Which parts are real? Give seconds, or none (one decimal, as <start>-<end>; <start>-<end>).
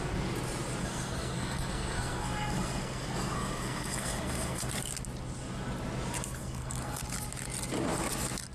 0.0-0.8; 4.7-6.4; 7.0-8.5